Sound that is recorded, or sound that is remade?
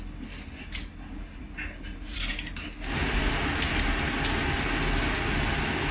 recorded